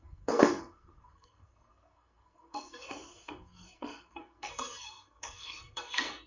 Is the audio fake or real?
fake